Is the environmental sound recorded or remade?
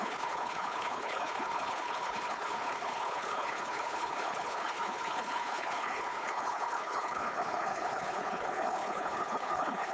remade